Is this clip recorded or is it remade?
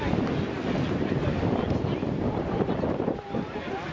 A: recorded